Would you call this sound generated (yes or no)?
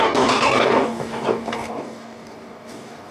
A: yes